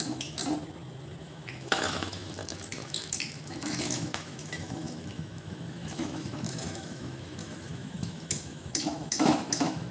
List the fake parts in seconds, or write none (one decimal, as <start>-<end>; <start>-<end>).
0.0-0.4; 1.2-9.9